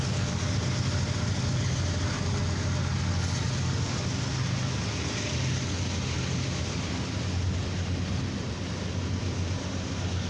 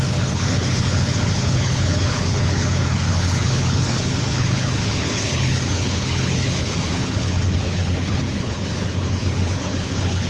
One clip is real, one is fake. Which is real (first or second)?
first